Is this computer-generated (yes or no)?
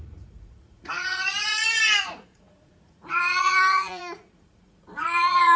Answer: yes